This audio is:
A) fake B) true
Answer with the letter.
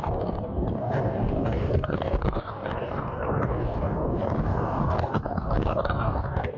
A